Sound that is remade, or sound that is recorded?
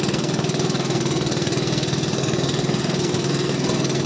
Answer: remade